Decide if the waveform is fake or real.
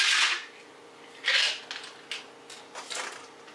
real